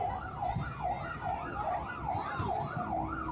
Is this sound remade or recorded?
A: recorded